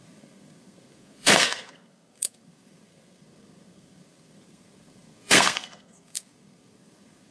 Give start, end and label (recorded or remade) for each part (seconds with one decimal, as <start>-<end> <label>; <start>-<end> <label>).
0.0-7.3 remade